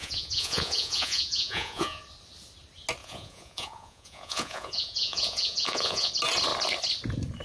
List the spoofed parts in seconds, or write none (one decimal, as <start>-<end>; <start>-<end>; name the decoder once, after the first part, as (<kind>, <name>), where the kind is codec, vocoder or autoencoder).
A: 0.0-2.0 (vocoder, Vocos); 3.0-6.1